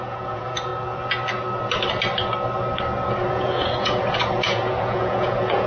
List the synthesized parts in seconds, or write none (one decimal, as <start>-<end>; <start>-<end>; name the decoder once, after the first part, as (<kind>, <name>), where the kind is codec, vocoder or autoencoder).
0.0-0.7 (vocoder, Vocos); 3.3-5.7